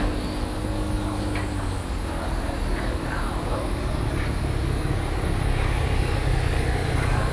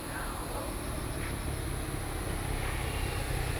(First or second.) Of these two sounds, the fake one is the first